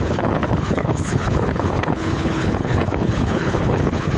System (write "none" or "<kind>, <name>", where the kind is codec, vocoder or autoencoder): codec, HILCodec